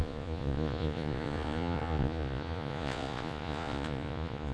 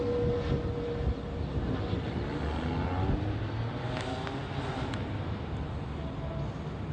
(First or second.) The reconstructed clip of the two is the first